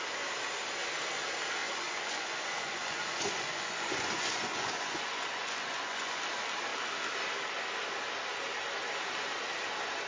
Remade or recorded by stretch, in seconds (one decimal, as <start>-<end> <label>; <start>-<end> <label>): 0.0-1.6 recorded; 1.6-6.2 remade; 6.2-10.1 recorded